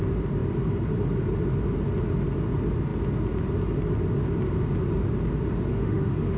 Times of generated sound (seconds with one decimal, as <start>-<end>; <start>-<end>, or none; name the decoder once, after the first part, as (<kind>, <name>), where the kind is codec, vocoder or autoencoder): 5.7-6.4 (autoencoder, DAC-VAE)